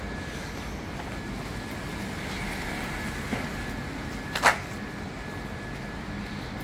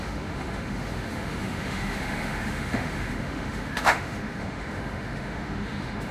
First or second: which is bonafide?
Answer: first